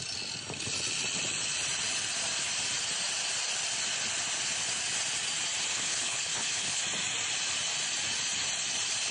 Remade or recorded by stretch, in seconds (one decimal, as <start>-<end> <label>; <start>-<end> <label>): 0.0-5.7 recorded; 5.7-6.8 remade; 6.8-9.1 recorded